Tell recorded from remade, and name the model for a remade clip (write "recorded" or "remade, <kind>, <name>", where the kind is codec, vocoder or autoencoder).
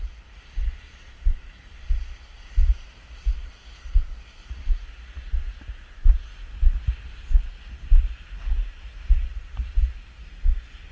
recorded